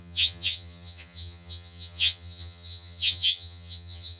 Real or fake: fake